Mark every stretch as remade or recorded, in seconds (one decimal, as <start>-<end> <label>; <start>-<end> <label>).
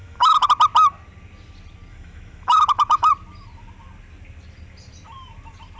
0.0-0.5 remade; 0.5-1.9 recorded; 1.9-3.1 remade; 3.1-5.8 recorded